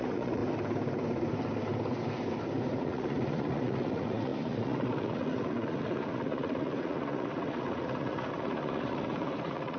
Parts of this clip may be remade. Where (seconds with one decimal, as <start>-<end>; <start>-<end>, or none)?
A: 0.0-0.4; 2.8-9.8